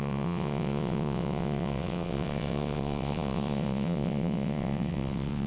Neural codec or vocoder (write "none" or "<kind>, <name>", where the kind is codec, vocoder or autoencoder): vocoder, WaveNeXt